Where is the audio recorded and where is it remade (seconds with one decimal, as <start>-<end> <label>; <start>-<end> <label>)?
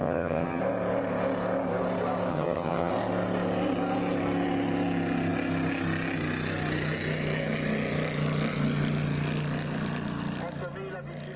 0.0-0.6 remade; 0.6-2.3 recorded; 2.3-2.9 remade; 2.9-11.4 recorded